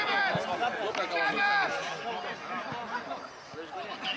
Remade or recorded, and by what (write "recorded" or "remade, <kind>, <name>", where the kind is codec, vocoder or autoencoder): recorded